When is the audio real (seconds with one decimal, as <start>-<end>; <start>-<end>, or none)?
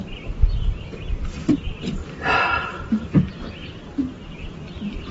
0.0-2.0; 3.2-5.1